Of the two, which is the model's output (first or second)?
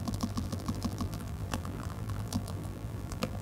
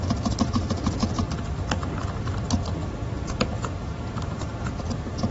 first